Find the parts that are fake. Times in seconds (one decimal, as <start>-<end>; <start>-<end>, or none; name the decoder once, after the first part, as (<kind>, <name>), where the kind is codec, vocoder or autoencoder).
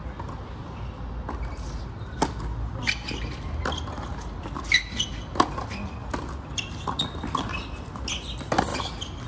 none